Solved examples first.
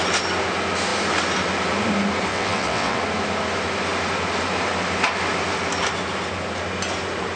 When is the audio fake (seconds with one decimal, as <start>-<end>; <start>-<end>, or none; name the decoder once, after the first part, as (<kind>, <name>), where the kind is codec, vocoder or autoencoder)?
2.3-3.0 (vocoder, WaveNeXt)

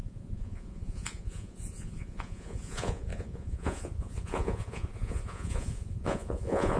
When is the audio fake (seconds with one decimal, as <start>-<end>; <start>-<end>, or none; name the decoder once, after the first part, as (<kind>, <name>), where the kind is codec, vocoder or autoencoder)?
0.0-6.8 (vocoder, Vocos)

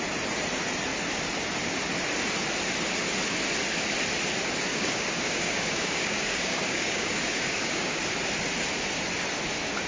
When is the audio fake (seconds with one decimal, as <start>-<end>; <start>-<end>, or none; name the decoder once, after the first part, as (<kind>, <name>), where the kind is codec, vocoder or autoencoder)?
4.7-8.0 (codec, DAC)

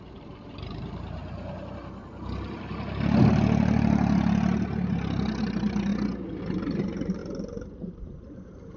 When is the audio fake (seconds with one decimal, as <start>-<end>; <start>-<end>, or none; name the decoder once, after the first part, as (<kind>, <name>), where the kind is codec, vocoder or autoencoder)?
0.0-1.2 (vocoder, BigVGAN v2); 5.4-5.9; 6.4-8.8

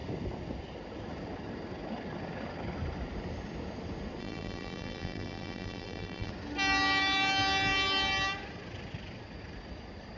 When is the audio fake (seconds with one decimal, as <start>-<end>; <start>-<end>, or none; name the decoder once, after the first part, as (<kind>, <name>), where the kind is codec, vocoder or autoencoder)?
4.2-6.3 (vocoder, BigVGAN v2)